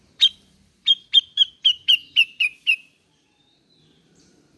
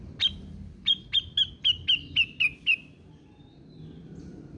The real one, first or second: second